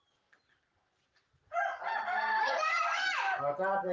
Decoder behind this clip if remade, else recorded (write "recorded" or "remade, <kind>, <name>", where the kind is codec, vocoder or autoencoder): recorded